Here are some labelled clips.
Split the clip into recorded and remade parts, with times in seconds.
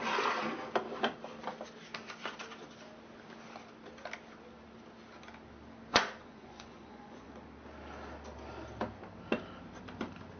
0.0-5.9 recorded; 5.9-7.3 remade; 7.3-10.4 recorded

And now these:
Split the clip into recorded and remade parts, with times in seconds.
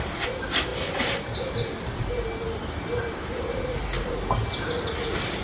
0.0-5.4 recorded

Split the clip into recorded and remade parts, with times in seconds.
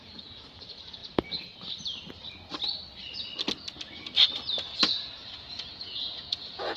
0.0-1.0 remade; 1.0-4.9 recorded; 4.9-6.8 remade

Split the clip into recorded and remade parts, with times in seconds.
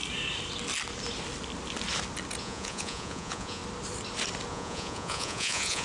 0.0-2.4 recorded; 2.4-3.6 remade; 3.6-4.5 recorded; 4.5-5.8 remade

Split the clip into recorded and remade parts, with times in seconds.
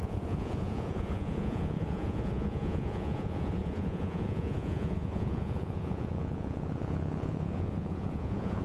0.0-8.6 remade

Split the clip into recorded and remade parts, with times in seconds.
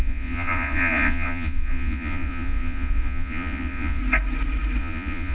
0.0-4.0 remade; 4.0-4.8 recorded; 4.8-5.3 remade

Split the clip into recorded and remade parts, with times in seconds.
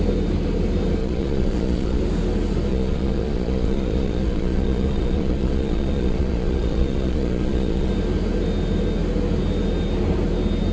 0.0-1.0 recorded; 1.0-2.0 remade; 2.0-2.7 recorded; 2.7-7.9 remade; 7.9-10.7 recorded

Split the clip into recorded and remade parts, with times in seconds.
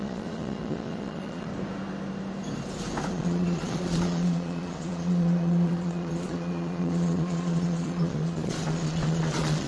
0.0-1.5 remade; 1.5-3.1 recorded; 3.1-9.7 remade